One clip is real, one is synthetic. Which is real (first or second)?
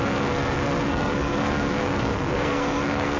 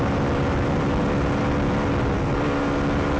second